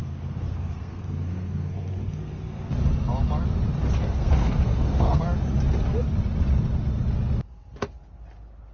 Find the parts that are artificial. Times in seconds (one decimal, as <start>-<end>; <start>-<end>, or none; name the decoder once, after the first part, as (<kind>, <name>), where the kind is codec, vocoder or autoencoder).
0.0-2.7 (codec, SNAC); 4.0-5.2